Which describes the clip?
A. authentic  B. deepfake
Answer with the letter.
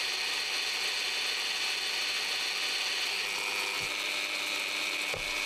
A